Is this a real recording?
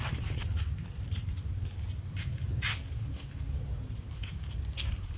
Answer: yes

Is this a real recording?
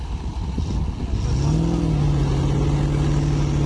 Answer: yes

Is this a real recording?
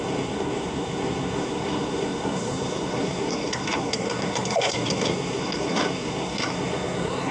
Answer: no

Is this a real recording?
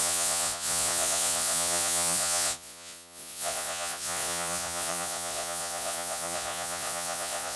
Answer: no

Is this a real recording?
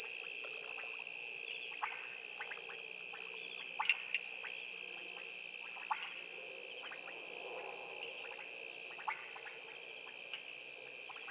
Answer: yes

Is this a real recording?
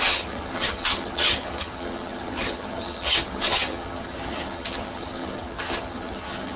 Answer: no